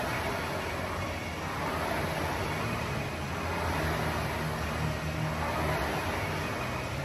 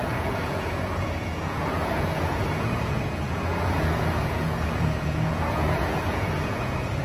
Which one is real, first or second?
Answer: first